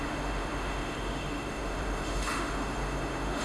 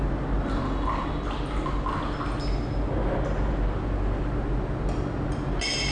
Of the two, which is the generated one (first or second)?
first